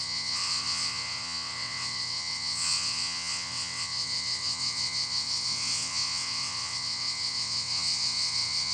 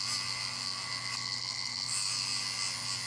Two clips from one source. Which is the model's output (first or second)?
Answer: first